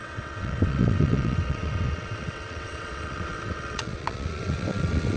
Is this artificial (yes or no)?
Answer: yes